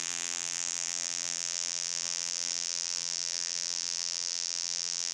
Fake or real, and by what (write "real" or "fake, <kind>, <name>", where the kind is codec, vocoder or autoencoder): fake, vocoder, BigVGAN v2